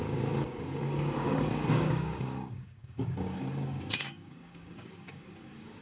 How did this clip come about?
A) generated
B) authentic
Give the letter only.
A